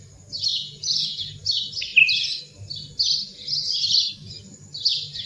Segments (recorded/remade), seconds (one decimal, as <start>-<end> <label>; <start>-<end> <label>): 0.0-0.5 recorded; 0.5-1.2 remade; 1.2-5.3 recorded